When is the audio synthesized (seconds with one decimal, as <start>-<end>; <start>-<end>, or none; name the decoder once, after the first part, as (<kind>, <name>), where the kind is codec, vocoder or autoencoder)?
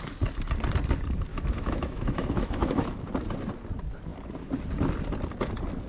1.3-2.9 (autoencoder, DAC-VAE)